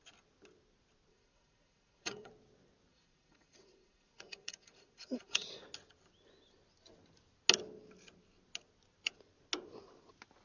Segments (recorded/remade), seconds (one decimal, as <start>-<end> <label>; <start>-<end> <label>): 0.0-1.1 recorded; 1.1-2.3 remade; 2.3-2.9 recorded; 2.9-5.6 remade; 5.6-10.4 recorded